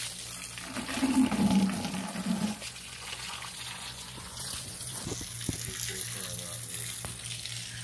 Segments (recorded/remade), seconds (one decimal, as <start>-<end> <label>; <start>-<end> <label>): 0.0-2.4 recorded; 2.4-5.0 remade; 5.0-7.8 recorded